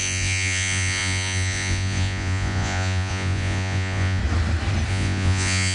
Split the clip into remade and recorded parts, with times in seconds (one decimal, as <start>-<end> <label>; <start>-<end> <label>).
0.0-4.2 remade; 4.2-4.9 recorded; 4.9-5.7 remade